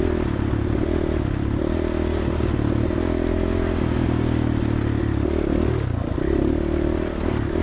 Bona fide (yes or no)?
yes